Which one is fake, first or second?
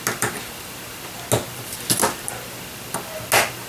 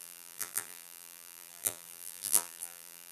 second